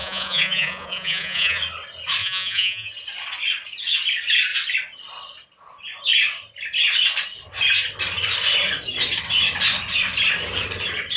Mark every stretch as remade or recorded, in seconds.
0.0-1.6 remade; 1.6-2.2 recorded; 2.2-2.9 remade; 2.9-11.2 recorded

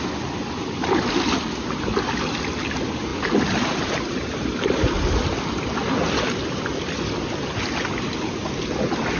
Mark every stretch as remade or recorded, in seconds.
0.0-3.1 recorded; 3.1-3.9 remade; 3.9-9.2 recorded